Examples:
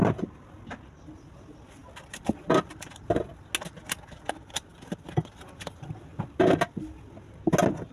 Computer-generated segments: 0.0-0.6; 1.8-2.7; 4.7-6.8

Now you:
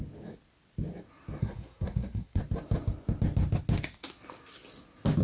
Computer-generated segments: 1.4-2.4

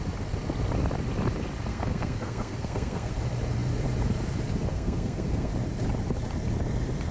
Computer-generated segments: 1.7-3.1; 4.7-5.5

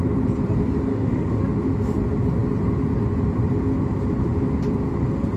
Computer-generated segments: 0.9-1.4

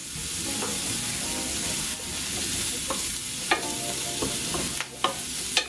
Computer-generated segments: none

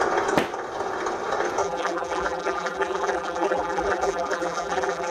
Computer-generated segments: 1.6-5.1

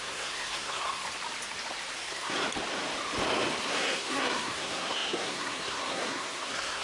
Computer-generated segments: 0.0-1.0; 2.0-2.4; 3.6-6.8